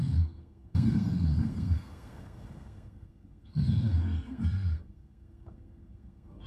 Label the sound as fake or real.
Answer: fake